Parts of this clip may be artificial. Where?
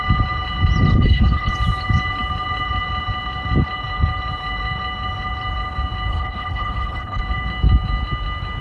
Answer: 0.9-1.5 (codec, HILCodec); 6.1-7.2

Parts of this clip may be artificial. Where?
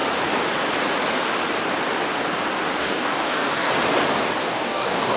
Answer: 2.8-3.7 (codec, DAC); 4.4-5.2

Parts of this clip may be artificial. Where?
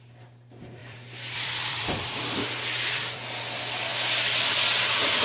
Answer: 0.8-3.4 (vocoder, BigVGAN v2)